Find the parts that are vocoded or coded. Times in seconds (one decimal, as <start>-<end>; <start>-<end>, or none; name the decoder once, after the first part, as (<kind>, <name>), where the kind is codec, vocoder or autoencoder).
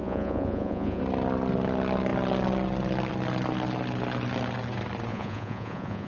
0.0-1.0 (vocoder, Vocos); 5.1-6.1